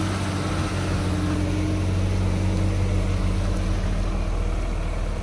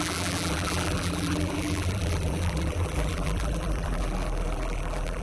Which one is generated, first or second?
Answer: second